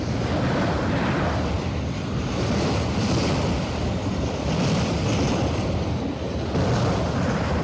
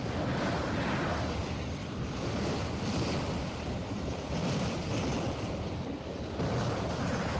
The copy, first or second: second